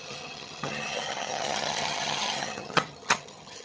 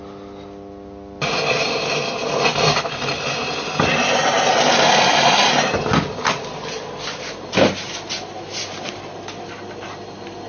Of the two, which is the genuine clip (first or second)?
second